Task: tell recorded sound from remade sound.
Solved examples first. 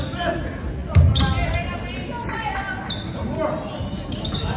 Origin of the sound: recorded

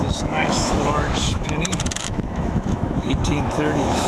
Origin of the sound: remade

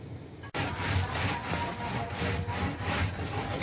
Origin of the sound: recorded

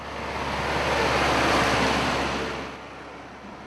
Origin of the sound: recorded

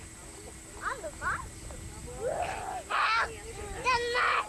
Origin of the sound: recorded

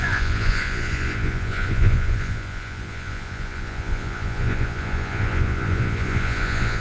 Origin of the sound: remade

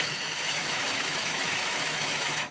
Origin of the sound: remade